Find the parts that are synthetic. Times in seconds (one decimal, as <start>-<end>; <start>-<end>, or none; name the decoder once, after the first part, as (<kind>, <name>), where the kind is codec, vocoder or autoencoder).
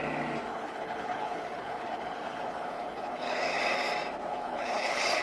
0.5-3.6 (codec, HILCodec); 4.3-5.2